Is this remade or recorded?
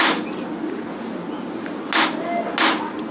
recorded